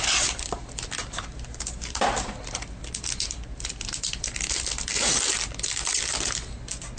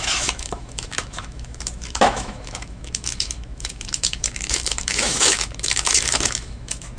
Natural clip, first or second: first